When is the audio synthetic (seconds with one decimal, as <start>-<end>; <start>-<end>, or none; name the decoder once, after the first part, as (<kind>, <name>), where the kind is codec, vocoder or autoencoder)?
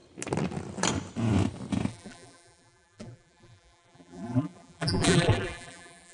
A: 1.9-6.1 (vocoder, BigVGAN v2)